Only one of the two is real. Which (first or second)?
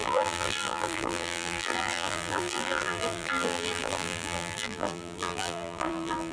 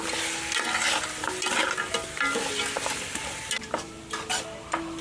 second